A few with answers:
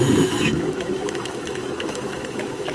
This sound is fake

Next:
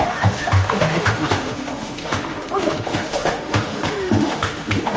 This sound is fake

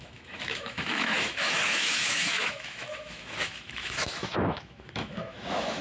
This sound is fake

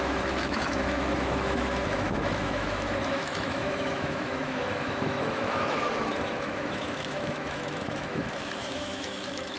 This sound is fake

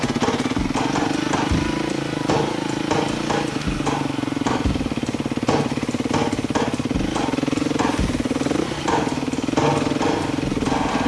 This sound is real